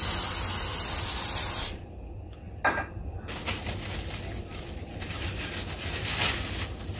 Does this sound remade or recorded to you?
recorded